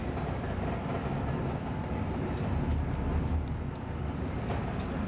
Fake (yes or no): no